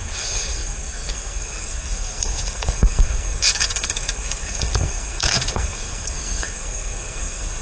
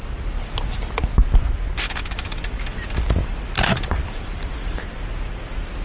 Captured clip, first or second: second